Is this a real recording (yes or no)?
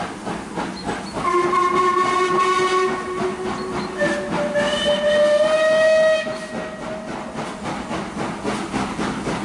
yes